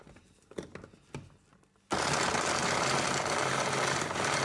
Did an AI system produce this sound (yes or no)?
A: no